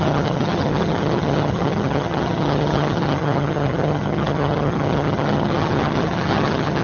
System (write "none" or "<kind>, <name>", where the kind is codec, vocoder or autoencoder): vocoder, HiFi-GAN